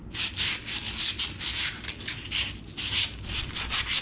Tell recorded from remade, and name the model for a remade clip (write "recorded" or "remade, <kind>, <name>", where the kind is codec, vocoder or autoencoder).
recorded